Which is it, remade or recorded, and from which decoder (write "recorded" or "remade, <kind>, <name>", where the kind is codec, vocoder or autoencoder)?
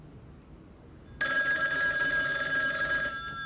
recorded